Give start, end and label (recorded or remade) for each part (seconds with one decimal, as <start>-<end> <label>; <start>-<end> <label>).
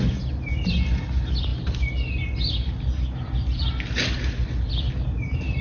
0.0-5.6 recorded